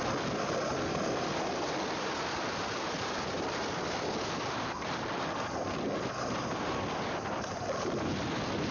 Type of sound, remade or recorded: recorded